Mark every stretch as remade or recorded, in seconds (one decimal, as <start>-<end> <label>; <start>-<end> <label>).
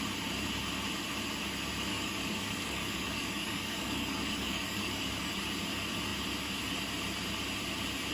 0.0-1.9 recorded; 1.9-5.3 remade; 5.3-8.1 recorded